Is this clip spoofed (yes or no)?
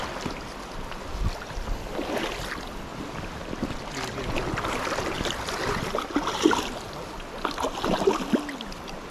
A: no